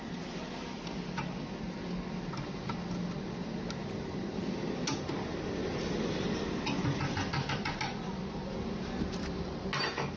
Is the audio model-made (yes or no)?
no